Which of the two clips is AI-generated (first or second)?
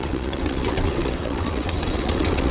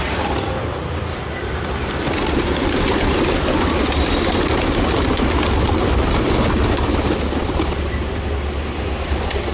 first